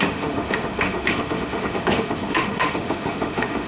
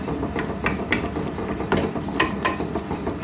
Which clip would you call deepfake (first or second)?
first